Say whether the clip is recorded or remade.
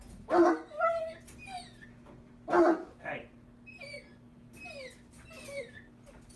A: recorded